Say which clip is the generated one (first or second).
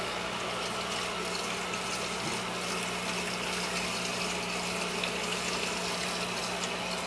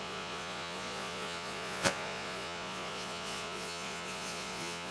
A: second